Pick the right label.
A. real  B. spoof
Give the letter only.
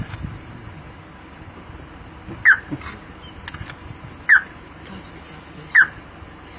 A